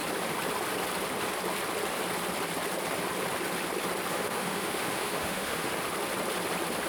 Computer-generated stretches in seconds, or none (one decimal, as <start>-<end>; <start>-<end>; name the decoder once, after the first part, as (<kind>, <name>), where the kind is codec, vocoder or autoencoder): 4.1-5.7 (autoencoder, DAC-VAE)